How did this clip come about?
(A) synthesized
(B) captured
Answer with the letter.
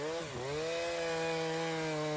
B